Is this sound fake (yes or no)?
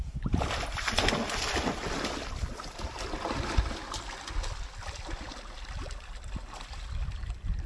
no